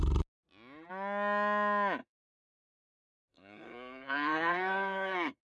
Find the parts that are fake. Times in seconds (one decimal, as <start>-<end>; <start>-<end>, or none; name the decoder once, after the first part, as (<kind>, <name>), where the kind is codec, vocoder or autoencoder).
2.0-5.6 (codec, SNAC)